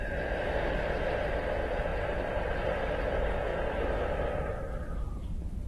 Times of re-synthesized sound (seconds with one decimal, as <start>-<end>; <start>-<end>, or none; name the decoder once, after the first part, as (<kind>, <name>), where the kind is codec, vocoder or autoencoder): 1.9-2.5 (vocoder, BigVGAN v2)